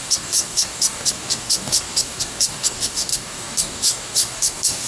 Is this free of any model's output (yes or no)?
no